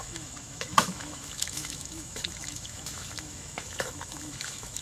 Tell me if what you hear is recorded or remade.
remade